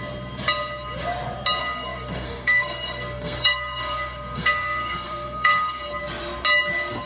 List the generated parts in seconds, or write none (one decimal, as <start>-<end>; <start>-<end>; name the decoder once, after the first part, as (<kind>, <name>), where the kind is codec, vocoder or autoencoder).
1.6-5.8 (codec, SNAC)